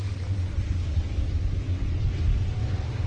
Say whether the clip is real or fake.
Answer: real